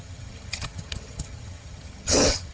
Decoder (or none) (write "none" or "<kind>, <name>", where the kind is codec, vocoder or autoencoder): vocoder, HiFi-GAN